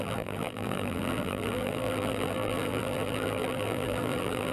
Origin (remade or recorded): remade